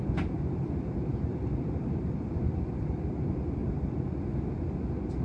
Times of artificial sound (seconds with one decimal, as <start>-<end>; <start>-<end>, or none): none